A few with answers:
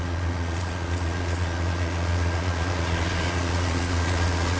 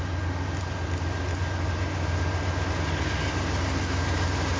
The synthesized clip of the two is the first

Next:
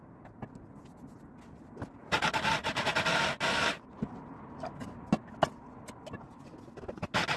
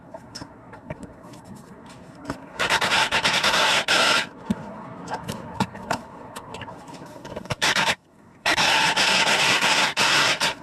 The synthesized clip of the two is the second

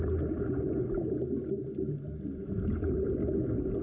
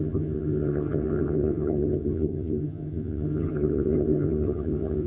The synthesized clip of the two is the second